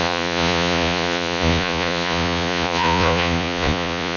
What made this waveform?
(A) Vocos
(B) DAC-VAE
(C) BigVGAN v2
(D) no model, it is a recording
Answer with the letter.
A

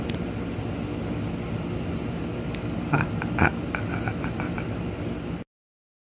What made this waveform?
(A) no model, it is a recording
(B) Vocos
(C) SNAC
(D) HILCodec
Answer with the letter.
A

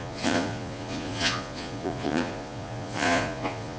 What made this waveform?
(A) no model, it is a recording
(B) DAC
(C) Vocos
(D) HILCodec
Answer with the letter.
C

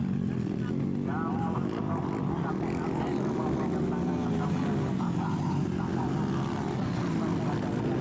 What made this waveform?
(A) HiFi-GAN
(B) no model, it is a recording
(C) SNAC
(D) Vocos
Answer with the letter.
B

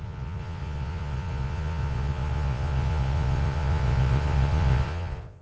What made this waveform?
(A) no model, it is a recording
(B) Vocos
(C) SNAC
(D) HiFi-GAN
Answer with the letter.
B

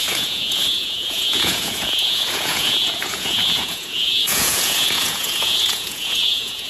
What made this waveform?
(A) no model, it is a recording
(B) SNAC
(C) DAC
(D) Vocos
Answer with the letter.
D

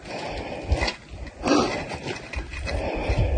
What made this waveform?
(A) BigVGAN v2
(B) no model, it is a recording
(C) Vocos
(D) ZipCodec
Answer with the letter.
B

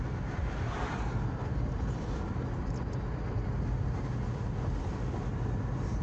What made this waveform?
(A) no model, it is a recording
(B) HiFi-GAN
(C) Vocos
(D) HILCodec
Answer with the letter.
A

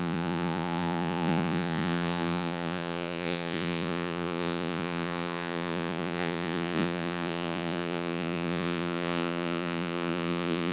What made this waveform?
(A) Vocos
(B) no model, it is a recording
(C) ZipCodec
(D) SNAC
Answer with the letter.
A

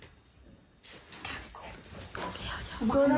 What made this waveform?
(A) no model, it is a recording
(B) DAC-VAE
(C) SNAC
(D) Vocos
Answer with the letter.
A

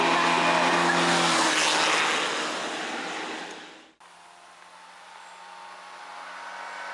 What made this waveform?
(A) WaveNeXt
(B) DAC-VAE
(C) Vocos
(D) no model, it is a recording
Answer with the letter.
D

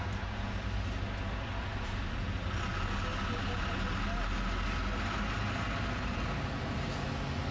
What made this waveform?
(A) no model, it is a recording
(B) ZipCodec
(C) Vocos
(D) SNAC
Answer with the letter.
A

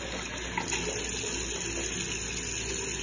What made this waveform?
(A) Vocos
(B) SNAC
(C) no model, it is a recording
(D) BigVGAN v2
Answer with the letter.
C